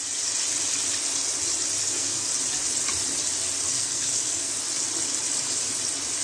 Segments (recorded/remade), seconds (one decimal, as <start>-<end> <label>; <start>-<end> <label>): 0.0-1.8 recorded; 1.8-2.3 remade; 2.3-3.7 recorded; 3.7-4.5 remade; 4.5-6.2 recorded